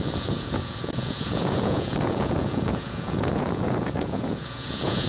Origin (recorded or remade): remade